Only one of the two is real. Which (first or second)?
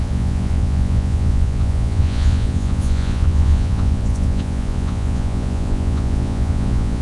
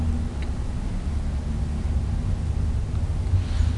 second